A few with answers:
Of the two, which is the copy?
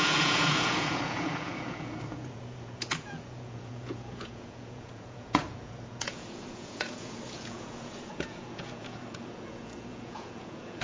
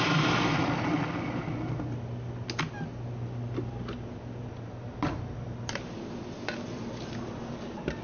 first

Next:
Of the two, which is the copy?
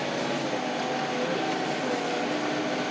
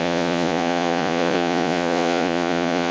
second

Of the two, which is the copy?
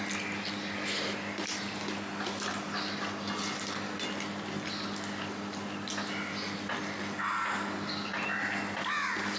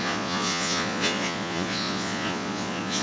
second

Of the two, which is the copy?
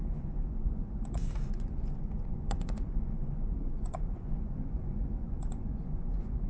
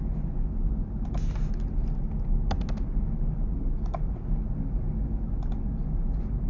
first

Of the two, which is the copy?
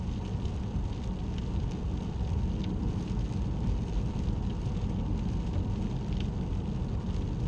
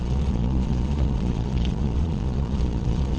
second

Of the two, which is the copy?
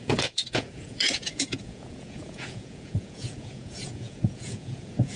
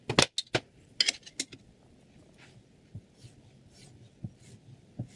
first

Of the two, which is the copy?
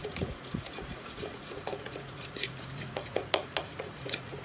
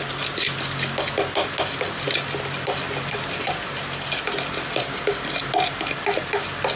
first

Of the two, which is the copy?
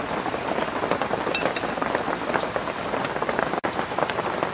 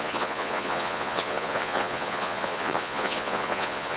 second